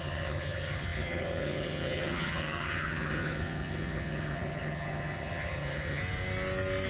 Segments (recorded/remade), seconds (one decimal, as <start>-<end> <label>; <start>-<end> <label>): 0.0-6.0 remade; 6.0-6.9 recorded